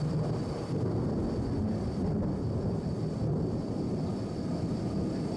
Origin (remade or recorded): recorded